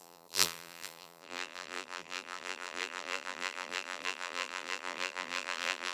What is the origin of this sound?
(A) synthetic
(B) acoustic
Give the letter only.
A